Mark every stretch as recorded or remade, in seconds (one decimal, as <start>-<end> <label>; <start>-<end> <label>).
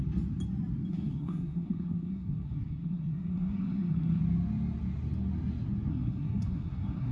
0.0-0.9 recorded; 0.9-4.2 remade; 4.2-5.9 recorded; 5.9-7.1 remade